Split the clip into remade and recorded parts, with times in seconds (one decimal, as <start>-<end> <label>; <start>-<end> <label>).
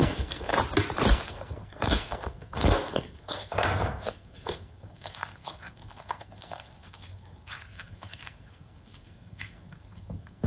0.0-0.5 remade; 0.5-1.1 recorded; 1.1-10.5 remade